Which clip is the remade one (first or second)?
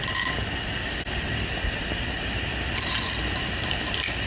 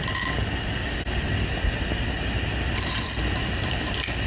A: first